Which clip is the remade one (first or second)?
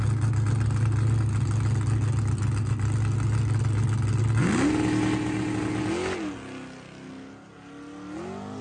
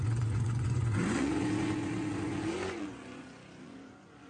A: second